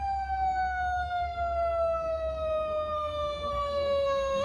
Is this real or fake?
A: fake